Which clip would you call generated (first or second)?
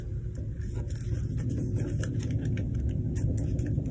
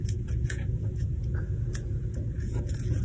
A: second